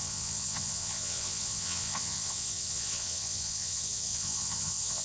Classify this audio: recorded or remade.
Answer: remade